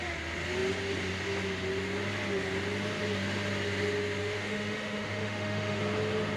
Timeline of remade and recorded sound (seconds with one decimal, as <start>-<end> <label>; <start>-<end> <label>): 0.0-4.2 recorded; 4.2-5.8 remade; 5.8-6.4 recorded